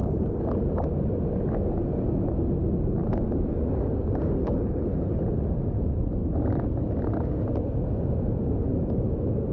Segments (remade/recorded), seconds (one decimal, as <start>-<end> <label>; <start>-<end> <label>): 0.0-4.4 recorded; 4.4-5.2 remade; 5.2-9.5 recorded